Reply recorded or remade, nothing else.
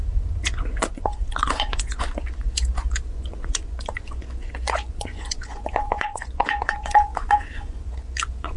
remade